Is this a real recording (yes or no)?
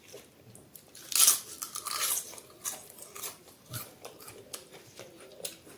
yes